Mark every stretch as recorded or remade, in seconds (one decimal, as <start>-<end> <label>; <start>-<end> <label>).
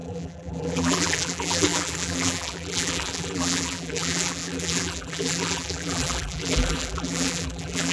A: 0.0-7.9 remade